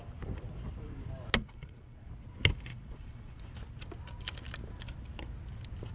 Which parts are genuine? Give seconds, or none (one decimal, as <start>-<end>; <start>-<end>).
0.0-1.4; 2.1-2.7; 3.4-5.9